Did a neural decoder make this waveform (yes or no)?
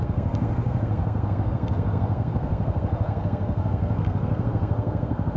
yes